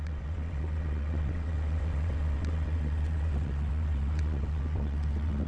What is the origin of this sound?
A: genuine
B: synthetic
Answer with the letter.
B